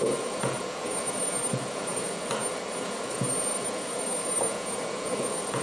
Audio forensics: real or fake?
fake